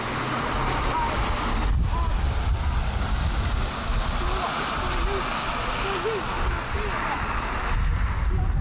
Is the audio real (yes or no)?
yes